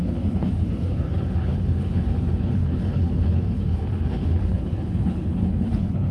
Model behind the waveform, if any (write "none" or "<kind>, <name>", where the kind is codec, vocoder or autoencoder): codec, HILCodec